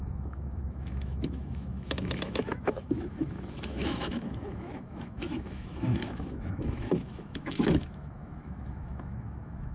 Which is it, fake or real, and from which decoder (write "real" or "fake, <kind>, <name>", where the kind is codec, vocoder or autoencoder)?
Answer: fake, autoencoder, DAC-VAE